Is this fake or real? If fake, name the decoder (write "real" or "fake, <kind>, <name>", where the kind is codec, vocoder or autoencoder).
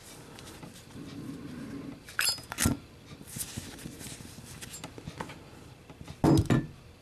real